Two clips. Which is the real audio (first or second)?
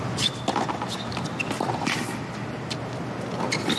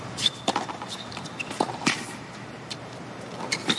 first